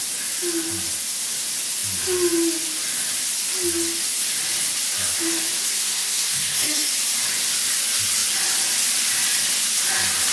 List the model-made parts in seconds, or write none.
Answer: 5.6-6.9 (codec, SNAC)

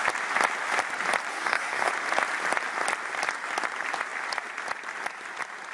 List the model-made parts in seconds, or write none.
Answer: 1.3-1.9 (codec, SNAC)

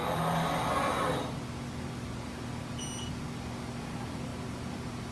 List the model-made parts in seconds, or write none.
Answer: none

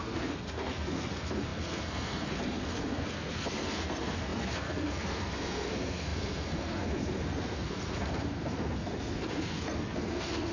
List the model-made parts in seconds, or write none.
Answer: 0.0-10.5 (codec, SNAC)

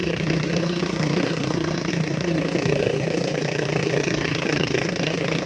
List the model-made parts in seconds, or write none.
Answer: 0.0-5.5 (codec, SNAC)

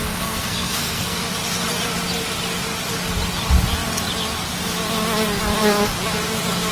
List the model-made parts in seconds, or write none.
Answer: 0.0-1.2 (codec, SNAC)

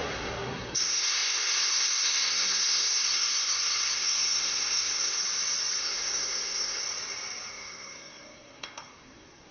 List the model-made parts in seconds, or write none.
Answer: 0.0-5.2 (codec, SNAC); 5.8-6.8; 7.5-9.5

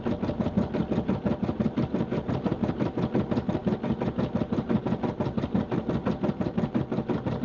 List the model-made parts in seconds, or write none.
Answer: none